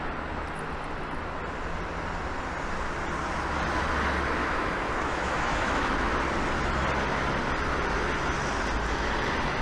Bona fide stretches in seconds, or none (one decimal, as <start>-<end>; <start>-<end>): 0.0-4.4; 5.9-9.6